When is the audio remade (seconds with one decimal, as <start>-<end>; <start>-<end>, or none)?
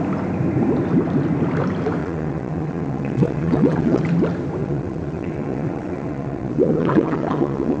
2.0-4.0; 4.6-7.8